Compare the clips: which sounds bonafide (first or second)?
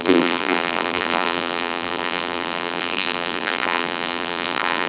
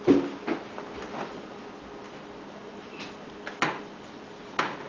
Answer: second